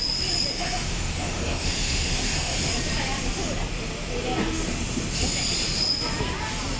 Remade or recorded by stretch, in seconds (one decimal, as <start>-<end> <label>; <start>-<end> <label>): 0.0-0.5 recorded; 0.5-2.7 remade; 2.7-6.8 recorded